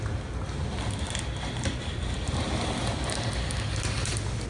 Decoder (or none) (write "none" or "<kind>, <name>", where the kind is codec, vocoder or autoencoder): none